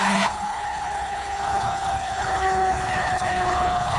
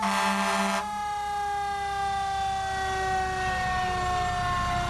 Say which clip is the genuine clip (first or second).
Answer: second